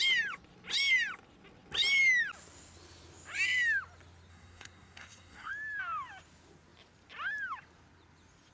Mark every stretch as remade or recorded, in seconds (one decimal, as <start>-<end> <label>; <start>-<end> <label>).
0.0-4.3 recorded; 4.3-5.5 remade; 5.5-8.5 recorded